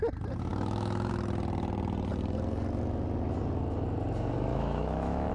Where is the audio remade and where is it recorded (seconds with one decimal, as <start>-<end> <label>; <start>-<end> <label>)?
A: 0.0-0.5 recorded; 0.5-1.1 remade; 1.1-4.5 recorded; 4.5-5.3 remade